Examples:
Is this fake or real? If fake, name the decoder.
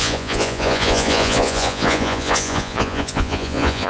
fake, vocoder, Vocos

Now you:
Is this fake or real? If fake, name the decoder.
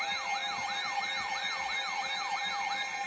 real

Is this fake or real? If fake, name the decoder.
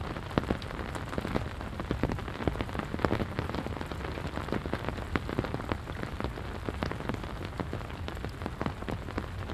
real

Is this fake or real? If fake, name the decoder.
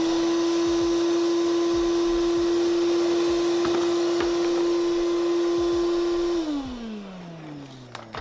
real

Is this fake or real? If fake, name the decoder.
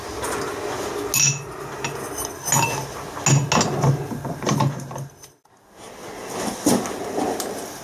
real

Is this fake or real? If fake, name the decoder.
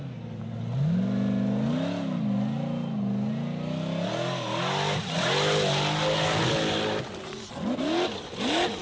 real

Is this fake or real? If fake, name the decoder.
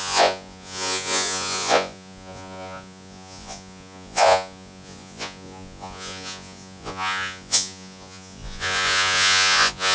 fake, vocoder, Vocos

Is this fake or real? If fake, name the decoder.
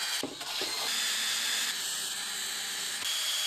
real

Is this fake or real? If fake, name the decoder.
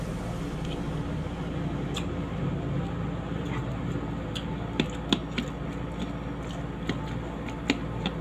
real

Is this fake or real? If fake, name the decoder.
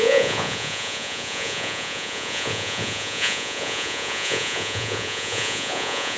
fake, vocoder, Vocos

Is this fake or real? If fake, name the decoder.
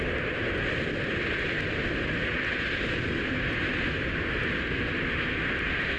real